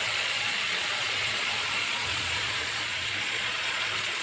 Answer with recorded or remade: remade